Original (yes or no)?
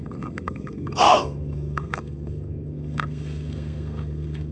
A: no